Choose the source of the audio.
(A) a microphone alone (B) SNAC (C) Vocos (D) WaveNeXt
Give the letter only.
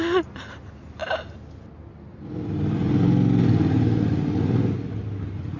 A